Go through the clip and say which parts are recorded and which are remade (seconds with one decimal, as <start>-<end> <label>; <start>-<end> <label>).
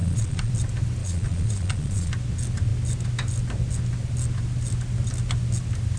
0.0-0.5 remade; 0.5-1.0 recorded; 1.0-2.1 remade; 2.1-6.0 recorded